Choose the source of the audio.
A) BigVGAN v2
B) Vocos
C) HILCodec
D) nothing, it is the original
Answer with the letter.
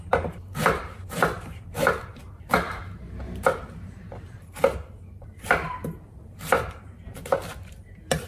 A